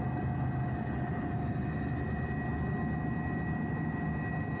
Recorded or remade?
recorded